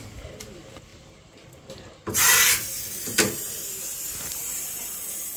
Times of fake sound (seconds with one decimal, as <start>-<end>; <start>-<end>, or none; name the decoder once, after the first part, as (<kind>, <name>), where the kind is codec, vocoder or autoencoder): none